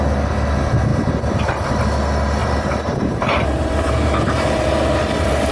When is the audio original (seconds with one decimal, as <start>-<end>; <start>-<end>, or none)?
0.0-2.4